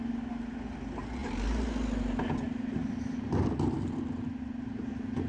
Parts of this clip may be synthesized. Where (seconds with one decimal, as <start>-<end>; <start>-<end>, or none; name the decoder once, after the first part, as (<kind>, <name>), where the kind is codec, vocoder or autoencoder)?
none